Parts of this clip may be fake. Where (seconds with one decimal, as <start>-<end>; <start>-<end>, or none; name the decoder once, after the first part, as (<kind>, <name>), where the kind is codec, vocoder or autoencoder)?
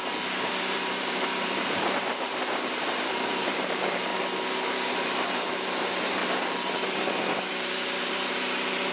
0.0-4.1 (vocoder, BigVGAN v2); 4.9-6.2; 7.5-8.9